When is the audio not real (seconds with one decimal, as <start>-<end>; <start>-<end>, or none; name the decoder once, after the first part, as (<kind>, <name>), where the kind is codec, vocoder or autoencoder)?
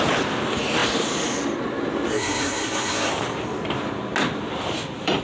2.1-3.1 (codec, SNAC)